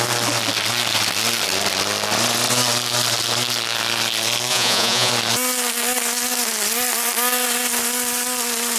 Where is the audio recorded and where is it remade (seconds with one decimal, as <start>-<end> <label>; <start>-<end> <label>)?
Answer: 0.0-4.5 recorded; 4.5-5.1 remade; 5.1-8.8 recorded